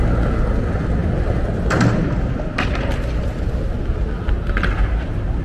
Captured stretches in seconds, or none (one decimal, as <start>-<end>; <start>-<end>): 0.0-5.4